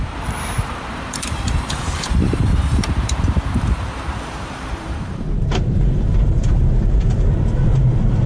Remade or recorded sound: remade